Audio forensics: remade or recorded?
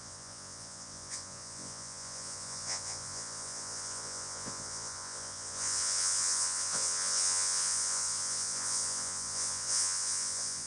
remade